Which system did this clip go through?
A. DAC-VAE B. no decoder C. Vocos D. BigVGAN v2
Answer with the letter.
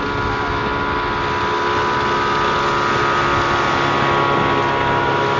B